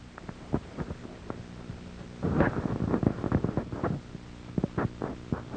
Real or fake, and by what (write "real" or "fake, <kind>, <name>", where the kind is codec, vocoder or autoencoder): real